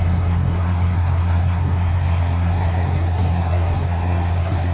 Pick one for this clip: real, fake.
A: fake